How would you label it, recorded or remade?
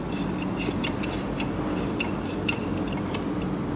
recorded